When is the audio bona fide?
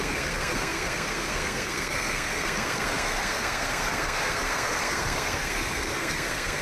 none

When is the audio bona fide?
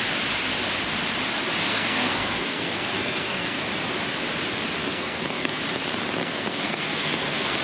0.0-1.7; 3.7-4.8; 5.6-6.2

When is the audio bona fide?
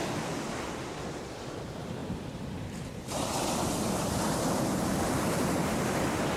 0.0-1.1; 2.0-5.8